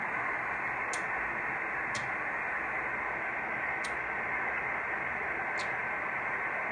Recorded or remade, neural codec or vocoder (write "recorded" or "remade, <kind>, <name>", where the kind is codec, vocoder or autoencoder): recorded